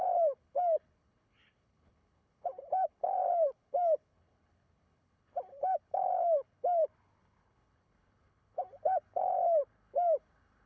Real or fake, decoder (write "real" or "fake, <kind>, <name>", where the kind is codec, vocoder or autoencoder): fake, codec, HILCodec